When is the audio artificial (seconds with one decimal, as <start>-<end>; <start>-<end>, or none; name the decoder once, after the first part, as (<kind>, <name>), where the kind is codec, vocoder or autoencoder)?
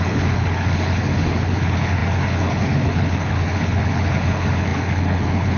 0.0-5.6 (codec, HILCodec)